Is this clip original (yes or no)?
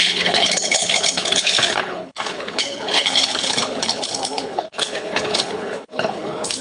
no